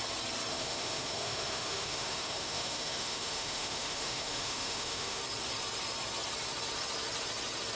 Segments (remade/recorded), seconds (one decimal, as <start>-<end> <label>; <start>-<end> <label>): 0.0-0.5 recorded; 0.5-5.2 remade; 5.2-7.8 recorded